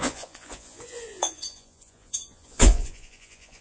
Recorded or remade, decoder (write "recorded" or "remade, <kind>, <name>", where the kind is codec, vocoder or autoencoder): remade, vocoder, Vocos